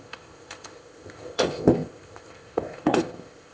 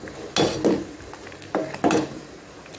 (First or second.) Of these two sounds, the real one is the second